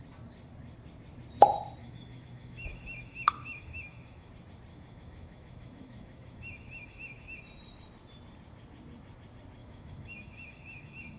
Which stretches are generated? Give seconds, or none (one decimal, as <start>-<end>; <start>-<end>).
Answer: 1.8-4.3; 4.7-7.4; 9.6-11.2